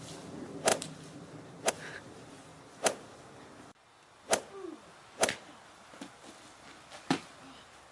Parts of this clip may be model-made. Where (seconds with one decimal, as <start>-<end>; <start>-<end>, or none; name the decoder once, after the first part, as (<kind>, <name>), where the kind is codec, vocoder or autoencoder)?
none